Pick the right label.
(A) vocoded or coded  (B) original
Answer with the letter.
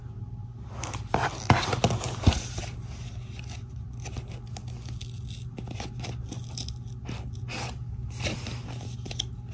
B